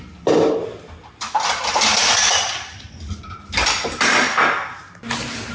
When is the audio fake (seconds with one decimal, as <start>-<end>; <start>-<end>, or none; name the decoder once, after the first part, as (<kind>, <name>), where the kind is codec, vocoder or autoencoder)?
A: none